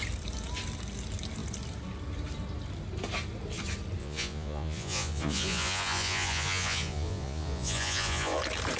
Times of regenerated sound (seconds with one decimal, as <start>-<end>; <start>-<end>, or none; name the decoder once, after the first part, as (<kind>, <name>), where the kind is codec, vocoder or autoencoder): 4.0-8.4 (vocoder, Vocos)